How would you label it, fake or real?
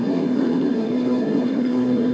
fake